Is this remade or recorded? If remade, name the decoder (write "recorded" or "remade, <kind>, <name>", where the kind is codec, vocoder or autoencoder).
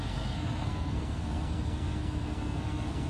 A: remade, codec, SNAC